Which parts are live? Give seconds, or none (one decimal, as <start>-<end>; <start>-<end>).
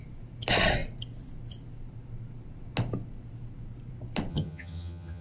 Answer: 0.0-4.3